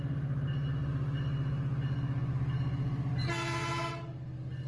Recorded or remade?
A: recorded